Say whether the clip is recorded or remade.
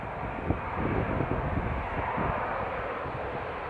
recorded